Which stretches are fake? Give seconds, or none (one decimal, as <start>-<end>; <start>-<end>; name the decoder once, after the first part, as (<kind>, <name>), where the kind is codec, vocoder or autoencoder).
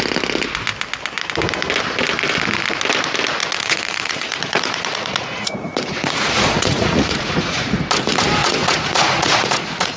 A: 3.4-7.7 (vocoder, Vocos); 8.4-10.0